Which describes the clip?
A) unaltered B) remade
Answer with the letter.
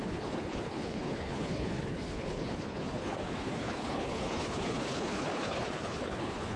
B